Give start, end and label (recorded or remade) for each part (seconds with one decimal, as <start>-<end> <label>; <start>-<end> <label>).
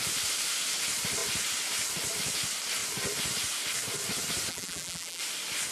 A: 0.0-4.5 recorded; 4.5-5.2 remade; 5.2-5.7 recorded